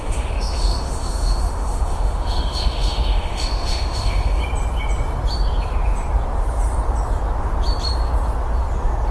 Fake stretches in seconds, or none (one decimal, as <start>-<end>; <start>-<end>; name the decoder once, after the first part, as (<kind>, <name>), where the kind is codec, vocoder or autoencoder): 0.0-4.4 (autoencoder, DAC-VAE)